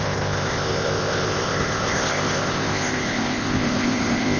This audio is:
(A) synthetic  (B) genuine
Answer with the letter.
A